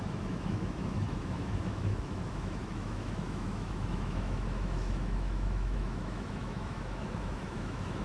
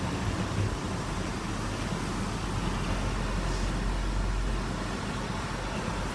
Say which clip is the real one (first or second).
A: second